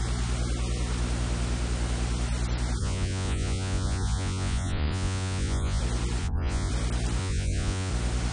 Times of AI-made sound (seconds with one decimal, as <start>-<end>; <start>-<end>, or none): 2.8-5.8; 6.2-6.7; 7.2-7.9